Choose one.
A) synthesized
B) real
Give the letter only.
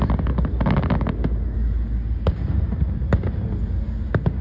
B